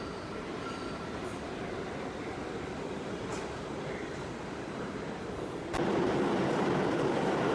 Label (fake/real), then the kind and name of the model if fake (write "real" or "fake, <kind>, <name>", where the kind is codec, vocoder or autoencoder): fake, vocoder, BigVGAN v2